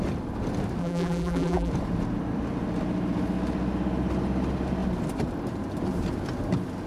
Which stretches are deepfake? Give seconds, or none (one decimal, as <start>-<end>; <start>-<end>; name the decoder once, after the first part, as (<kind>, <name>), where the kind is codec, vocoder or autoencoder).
0.8-1.7 (vocoder, BigVGAN v2)